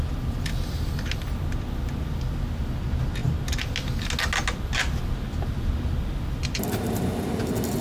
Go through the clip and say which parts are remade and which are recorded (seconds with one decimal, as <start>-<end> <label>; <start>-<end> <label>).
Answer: 0.0-7.8 recorded